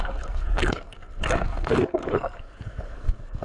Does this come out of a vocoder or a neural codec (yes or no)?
yes